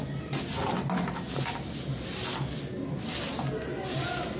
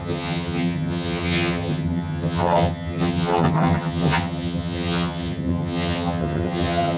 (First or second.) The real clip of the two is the first